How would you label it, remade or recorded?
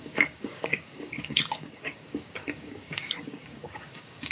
remade